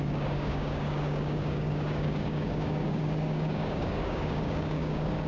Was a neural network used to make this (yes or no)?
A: yes